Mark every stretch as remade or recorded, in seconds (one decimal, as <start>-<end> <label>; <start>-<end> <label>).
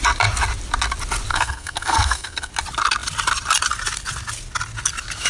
0.0-1.3 recorded; 1.3-2.5 remade; 2.5-5.3 recorded